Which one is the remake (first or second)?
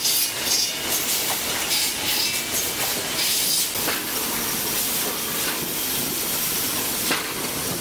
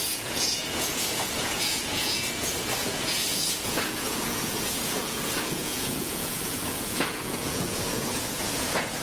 second